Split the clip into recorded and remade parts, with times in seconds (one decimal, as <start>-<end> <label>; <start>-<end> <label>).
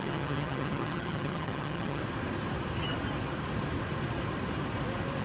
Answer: 0.0-2.0 remade; 2.0-5.2 recorded